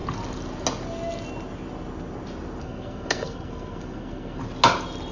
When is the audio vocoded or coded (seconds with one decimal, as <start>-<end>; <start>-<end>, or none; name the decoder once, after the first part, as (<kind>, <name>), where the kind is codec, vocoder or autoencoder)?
2.6-4.4 (codec, SNAC)

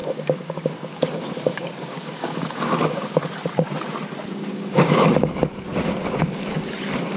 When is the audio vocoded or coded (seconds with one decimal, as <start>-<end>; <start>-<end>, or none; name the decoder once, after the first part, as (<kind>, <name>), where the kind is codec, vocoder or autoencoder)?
0.0-3.3 (codec, DAC); 4.3-5.4; 6.0-6.7

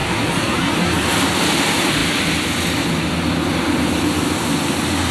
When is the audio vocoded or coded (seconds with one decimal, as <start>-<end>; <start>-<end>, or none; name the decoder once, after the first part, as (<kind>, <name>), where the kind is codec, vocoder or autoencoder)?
0.0-1.1 (vocoder, BigVGAN v2)

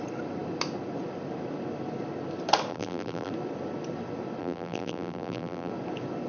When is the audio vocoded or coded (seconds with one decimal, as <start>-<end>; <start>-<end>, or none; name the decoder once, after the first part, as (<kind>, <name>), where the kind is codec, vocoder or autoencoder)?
2.7-3.3 (vocoder, BigVGAN v2); 4.4-5.7

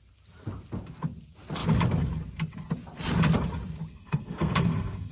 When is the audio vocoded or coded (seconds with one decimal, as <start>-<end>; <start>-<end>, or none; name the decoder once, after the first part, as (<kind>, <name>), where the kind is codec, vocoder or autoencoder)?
3.9-5.1 (codec, SNAC)